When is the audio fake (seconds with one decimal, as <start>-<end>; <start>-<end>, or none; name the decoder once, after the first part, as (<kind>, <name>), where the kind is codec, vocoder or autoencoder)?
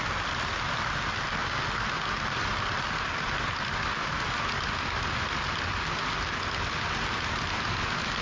none